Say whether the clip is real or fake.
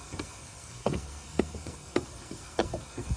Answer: fake